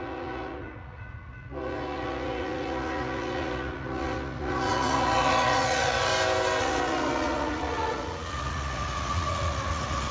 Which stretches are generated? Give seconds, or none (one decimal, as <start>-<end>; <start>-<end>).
0.0-6.1; 6.6-10.1